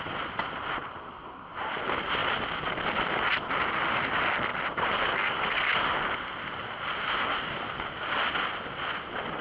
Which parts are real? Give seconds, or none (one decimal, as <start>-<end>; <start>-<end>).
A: 0.0-9.4